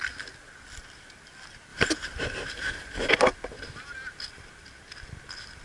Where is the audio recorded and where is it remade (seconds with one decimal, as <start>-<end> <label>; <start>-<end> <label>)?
0.0-1.7 recorded; 1.7-3.1 remade; 3.1-5.6 recorded